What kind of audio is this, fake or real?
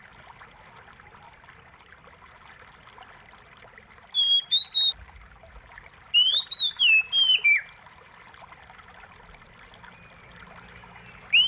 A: real